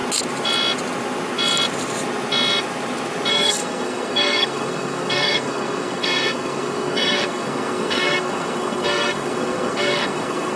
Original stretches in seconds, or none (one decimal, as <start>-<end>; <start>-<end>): 0.0-3.3